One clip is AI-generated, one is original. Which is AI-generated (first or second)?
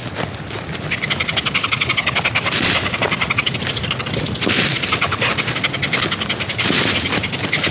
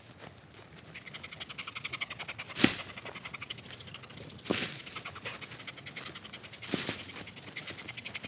first